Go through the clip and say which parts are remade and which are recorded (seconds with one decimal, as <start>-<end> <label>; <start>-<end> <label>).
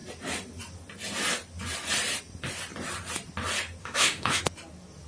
0.0-3.8 recorded; 3.8-4.4 remade; 4.4-5.1 recorded